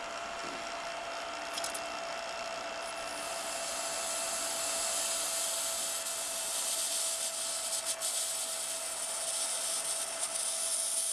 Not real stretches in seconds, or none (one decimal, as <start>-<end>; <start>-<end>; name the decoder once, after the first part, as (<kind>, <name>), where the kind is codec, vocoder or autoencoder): none